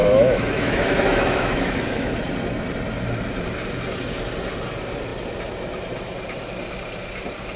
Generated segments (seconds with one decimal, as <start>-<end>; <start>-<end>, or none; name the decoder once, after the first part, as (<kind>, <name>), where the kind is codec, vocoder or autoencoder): 0.0-2.1 (autoencoder, DAC-VAE)